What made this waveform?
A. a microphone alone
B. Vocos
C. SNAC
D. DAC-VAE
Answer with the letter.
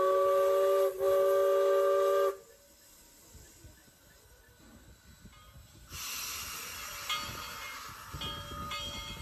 A